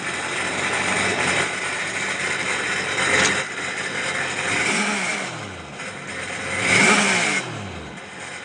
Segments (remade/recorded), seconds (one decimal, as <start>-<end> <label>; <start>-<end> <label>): 0.0-1.1 recorded; 1.1-2.7 remade; 2.7-8.4 recorded